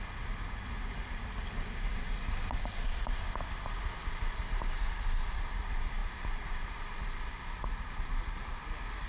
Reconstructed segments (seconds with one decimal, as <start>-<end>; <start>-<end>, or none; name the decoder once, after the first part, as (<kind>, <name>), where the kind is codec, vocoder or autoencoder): none